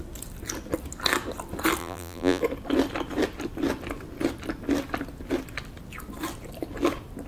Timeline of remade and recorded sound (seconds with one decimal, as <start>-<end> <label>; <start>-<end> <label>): 0.0-1.8 recorded; 1.8-2.4 remade; 2.4-7.3 recorded